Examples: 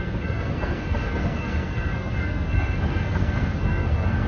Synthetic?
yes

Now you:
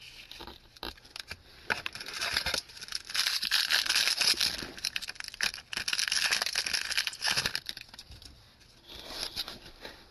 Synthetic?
no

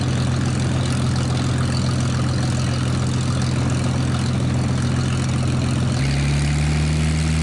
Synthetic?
no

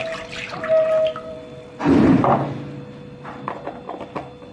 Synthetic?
yes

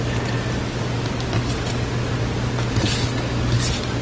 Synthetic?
no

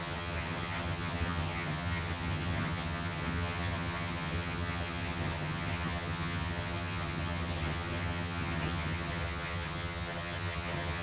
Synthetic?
yes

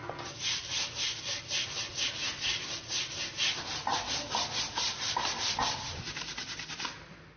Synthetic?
no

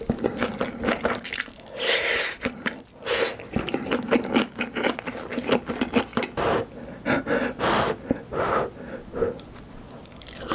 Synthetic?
no